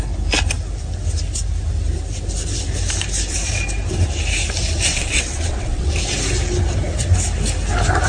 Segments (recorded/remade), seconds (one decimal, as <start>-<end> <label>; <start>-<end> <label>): 0.0-4.9 recorded; 4.9-5.9 remade; 5.9-8.1 recorded